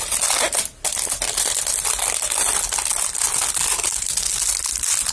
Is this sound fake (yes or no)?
no